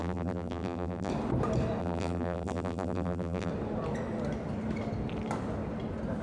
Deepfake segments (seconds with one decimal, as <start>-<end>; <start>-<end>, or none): 0.0-1.1; 1.8-3.5

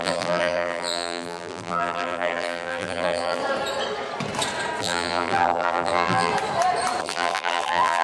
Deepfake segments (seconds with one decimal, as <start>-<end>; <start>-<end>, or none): 0.0-3.4; 4.8-6.3; 7.0-8.0